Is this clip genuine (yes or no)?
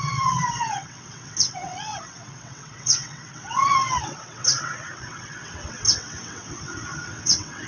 no